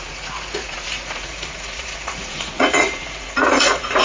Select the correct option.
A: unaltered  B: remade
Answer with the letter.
B